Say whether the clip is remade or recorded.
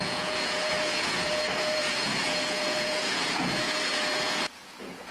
remade